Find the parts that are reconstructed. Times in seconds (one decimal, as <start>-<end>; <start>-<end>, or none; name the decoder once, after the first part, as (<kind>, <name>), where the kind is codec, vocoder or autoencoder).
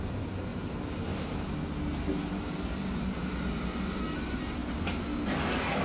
none